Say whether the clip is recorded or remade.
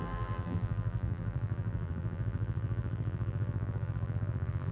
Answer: remade